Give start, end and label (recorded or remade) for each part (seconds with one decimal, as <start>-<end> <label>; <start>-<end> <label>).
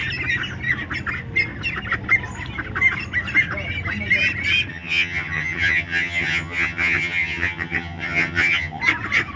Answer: 0.0-4.7 recorded; 4.7-8.8 remade; 8.8-9.4 recorded